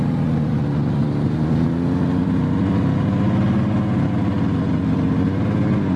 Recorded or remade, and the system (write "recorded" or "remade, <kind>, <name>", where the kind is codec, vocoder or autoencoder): recorded